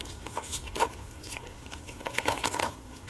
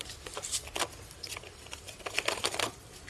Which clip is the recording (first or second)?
second